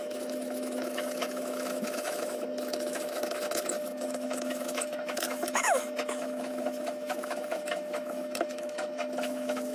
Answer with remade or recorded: remade